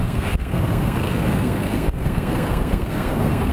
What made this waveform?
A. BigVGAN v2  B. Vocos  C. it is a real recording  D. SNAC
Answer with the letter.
D